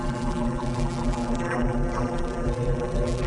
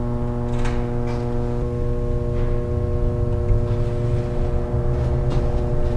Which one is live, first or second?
second